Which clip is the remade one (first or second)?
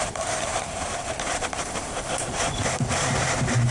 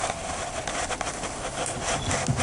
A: first